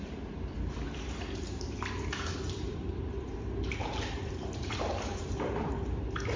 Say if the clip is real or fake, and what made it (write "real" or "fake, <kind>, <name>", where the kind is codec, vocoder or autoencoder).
fake, vocoder, BigVGAN v2